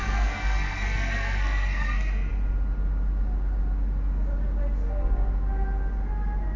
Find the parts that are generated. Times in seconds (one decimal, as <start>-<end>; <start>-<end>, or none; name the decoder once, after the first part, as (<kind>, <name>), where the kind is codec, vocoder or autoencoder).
0.0-2.3 (codec, SNAC)